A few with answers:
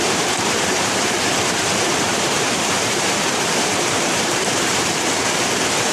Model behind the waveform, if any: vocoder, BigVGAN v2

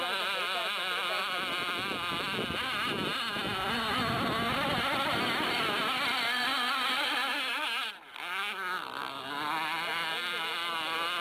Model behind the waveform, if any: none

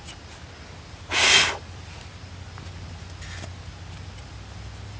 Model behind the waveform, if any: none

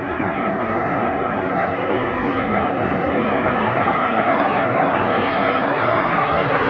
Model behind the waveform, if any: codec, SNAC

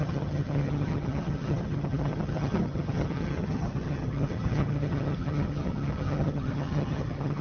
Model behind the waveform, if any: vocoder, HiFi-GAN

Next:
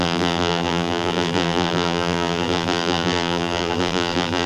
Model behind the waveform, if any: vocoder, BigVGAN v2